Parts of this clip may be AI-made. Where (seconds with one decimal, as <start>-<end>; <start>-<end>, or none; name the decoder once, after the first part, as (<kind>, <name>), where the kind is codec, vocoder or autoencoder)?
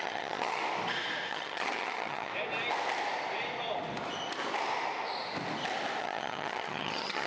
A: 0.0-0.6 (vocoder, HiFi-GAN); 1.3-2.3; 6.0-7.3